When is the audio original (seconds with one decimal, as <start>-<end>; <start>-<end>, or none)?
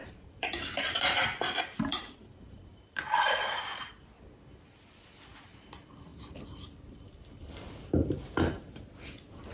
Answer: 0.6-1.9; 3.0-6.1; 8.5-9.5